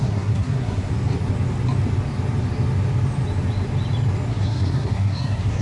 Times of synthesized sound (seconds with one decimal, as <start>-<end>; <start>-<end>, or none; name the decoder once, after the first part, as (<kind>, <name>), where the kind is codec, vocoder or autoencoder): 0.0-0.9 (codec, SNAC); 4.3-5.6